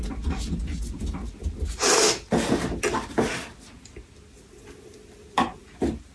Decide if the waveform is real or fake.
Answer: real